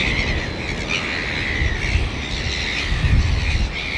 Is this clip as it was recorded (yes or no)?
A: yes